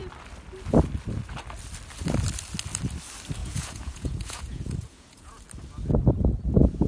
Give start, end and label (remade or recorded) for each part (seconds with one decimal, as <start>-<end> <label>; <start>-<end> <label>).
0.0-3.4 recorded; 3.4-5.4 remade; 5.4-6.9 recorded